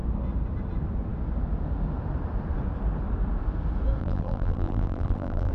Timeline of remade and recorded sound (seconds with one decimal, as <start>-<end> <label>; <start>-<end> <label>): 0.0-4.0 recorded; 4.0-5.5 remade